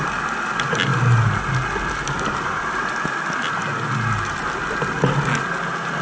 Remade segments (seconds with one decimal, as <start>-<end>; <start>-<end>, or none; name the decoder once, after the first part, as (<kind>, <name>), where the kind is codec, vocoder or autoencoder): none